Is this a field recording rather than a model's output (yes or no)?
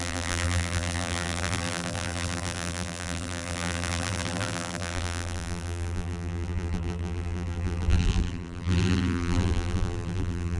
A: no